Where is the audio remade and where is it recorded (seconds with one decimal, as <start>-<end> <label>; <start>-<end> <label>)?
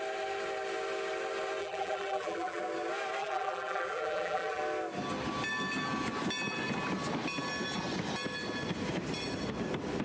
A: 0.0-1.6 recorded; 1.6-2.6 remade; 2.6-3.2 recorded; 3.2-4.6 remade; 4.6-10.0 recorded